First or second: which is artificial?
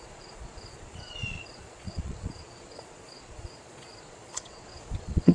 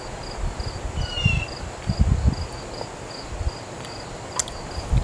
first